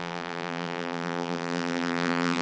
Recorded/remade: remade